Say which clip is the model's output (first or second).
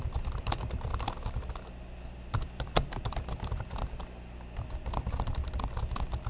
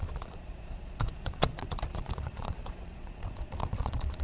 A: second